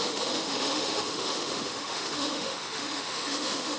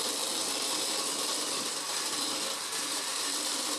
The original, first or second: second